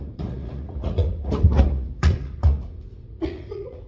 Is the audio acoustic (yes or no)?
no